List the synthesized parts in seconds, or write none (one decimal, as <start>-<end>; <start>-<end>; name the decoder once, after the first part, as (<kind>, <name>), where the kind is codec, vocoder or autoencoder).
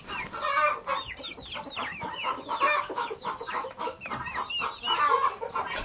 1.9-4.1 (autoencoder, DAC-VAE)